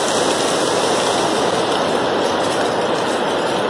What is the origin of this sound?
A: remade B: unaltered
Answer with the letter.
B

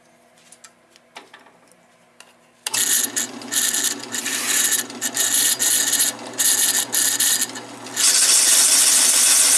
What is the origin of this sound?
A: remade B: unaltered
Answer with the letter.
B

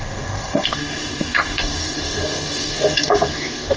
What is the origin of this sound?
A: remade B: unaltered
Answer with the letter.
A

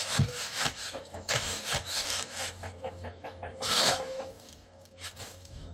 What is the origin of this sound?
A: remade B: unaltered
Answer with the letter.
A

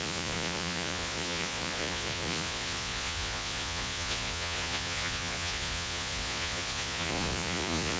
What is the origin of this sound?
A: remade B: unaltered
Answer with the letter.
A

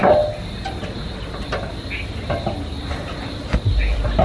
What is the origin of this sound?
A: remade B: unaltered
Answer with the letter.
B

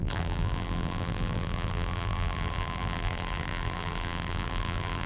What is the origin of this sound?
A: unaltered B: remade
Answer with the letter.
B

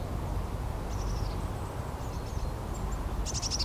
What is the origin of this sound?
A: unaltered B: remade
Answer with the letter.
A